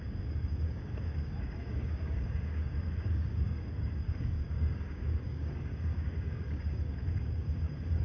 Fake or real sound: fake